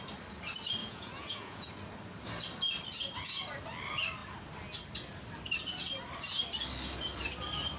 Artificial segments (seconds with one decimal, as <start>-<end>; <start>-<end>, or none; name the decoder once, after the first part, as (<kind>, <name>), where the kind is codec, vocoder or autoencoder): 0.8-1.7 (vocoder, Vocos)